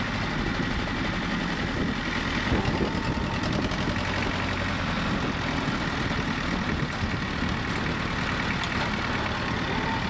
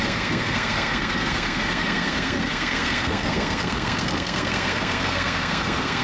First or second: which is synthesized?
second